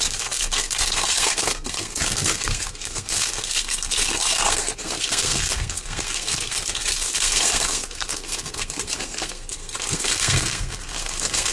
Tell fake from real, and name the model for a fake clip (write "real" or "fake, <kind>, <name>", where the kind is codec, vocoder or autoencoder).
fake, codec, SNAC